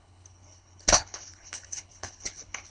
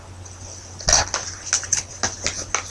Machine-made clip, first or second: first